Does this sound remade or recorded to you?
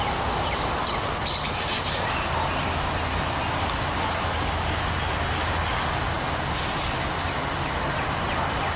recorded